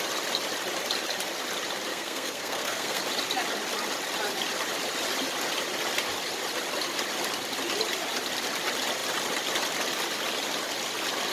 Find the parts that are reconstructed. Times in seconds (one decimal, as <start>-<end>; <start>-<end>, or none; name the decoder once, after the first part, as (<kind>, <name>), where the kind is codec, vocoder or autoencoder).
1.9-3.0 (codec, SNAC)